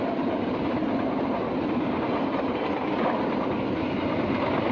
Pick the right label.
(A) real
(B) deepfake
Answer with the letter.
A